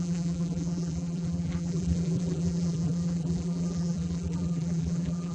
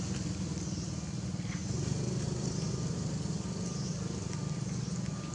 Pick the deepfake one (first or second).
first